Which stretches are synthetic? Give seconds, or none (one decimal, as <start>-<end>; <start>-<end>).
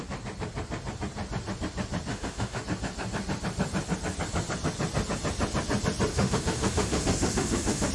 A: 2.1-2.6; 6.1-7.9